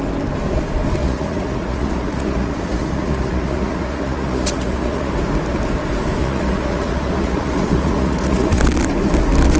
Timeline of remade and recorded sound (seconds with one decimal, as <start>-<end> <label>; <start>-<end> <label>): 0.0-1.0 recorded; 1.0-5.1 remade; 5.1-6.2 recorded; 6.2-8.6 remade; 8.6-9.6 recorded